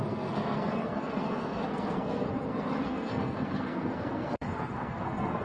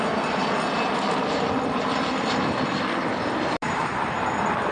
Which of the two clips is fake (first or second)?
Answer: first